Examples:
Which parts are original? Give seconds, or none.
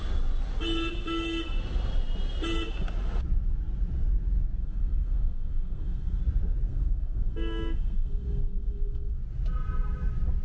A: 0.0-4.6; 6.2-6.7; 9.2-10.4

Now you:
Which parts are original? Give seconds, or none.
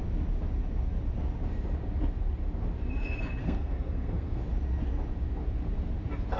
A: 0.0-3.4; 4.4-6.4